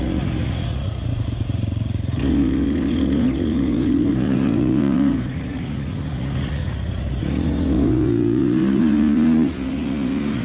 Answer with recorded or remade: remade